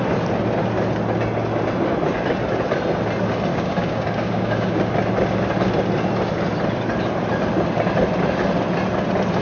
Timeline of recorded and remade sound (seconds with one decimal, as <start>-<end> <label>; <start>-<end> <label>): 0.0-3.5 recorded; 3.5-4.9 remade; 4.9-9.4 recorded